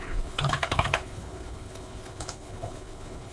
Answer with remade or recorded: remade